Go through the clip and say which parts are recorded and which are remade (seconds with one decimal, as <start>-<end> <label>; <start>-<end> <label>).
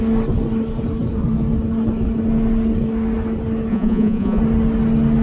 0.0-3.7 recorded; 3.7-4.4 remade; 4.4-5.2 recorded